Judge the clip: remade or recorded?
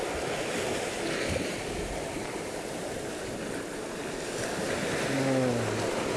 recorded